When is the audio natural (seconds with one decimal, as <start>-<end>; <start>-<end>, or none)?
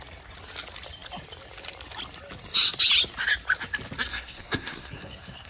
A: 0.0-4.1